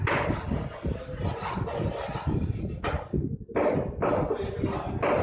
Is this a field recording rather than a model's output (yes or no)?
yes